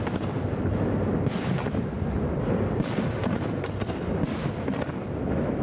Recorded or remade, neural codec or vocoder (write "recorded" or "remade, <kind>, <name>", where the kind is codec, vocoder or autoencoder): recorded